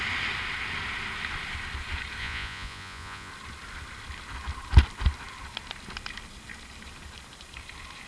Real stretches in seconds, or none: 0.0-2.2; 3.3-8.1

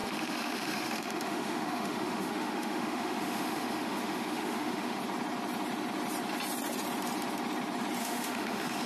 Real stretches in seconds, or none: 5.0-8.0

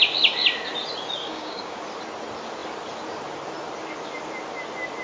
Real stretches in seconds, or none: 0.0-1.2; 1.8-5.0

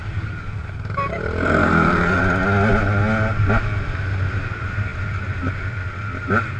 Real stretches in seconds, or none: 1.2-1.6; 2.2-6.6

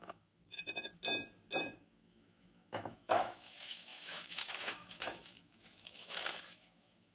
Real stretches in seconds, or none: 0.9-1.6

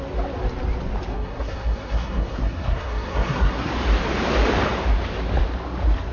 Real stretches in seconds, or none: 0.0-1.1; 3.7-6.1

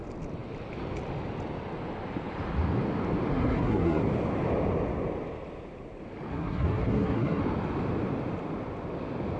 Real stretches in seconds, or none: 0.0-3.3; 4.0-6.3; 7.4-9.4